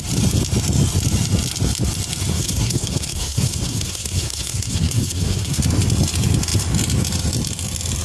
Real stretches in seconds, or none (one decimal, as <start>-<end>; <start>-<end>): 0.0-2.3; 5.6-8.0